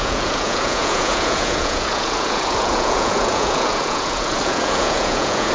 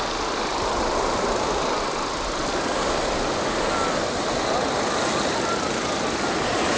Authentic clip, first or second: second